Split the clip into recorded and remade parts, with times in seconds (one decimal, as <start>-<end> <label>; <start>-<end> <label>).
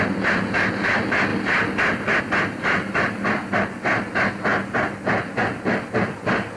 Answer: 0.0-6.6 recorded